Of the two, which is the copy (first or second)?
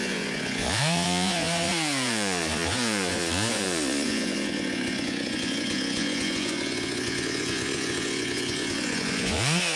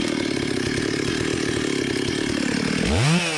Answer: first